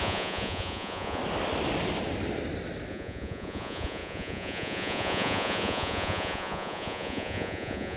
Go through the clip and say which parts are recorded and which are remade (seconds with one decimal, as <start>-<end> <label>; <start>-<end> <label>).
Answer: 0.0-1.2 remade; 1.2-2.9 recorded; 2.9-8.0 remade